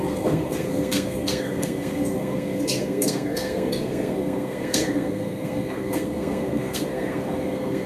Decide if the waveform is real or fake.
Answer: fake